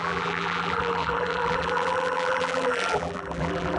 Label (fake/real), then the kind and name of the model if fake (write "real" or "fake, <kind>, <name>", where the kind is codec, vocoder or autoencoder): fake, vocoder, BigVGAN v2